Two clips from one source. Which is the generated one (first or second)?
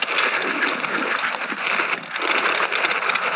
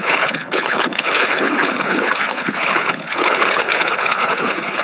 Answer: second